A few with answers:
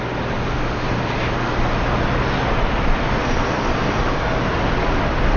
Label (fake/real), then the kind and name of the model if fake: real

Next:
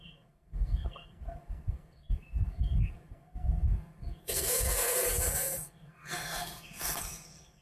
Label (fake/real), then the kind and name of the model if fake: fake, codec, SNAC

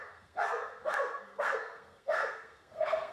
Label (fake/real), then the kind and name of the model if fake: fake, codec, SNAC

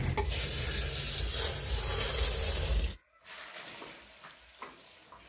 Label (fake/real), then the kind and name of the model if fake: real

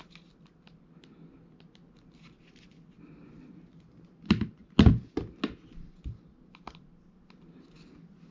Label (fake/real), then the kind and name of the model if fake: real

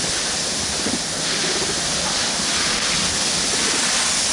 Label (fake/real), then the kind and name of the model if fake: real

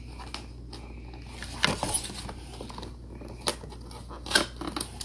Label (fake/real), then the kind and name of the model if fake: real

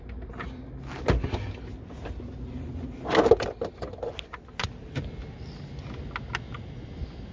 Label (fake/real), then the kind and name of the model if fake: real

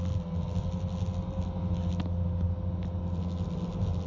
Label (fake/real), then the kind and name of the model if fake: real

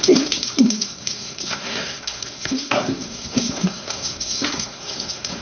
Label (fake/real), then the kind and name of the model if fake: fake, codec, SNAC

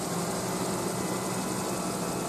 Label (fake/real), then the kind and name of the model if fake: real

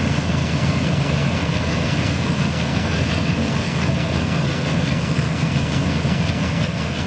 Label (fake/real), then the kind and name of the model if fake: fake, codec, SNAC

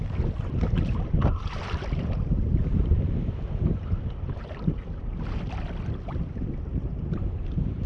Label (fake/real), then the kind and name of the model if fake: real